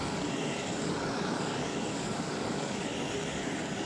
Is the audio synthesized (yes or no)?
yes